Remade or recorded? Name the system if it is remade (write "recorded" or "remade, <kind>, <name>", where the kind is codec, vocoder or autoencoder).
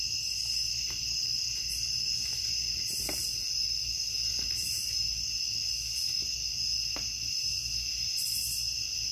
recorded